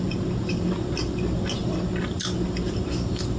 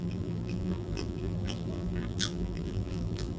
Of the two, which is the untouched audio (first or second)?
first